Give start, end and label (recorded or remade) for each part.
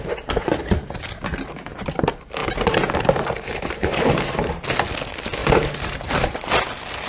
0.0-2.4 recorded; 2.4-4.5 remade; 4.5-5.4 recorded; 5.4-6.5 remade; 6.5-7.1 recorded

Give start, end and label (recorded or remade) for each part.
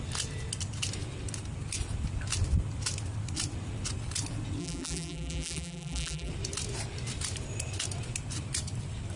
0.0-4.6 recorded; 4.6-6.3 remade; 6.3-9.2 recorded